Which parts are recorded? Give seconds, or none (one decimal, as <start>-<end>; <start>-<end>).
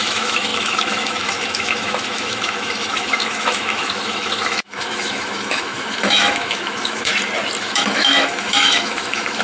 7.1-7.6